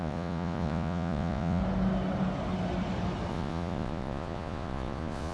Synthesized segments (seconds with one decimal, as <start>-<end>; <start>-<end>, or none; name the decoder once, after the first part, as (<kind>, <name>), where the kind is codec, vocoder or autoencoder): 0.0-1.6 (vocoder, Vocos); 3.3-5.3